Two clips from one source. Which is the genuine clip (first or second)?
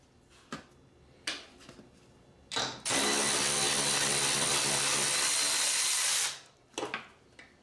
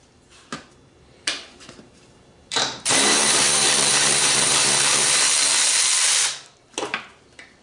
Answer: first